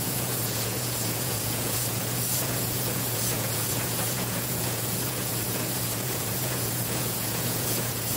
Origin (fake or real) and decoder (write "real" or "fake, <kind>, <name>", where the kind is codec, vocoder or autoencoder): fake, vocoder, Vocos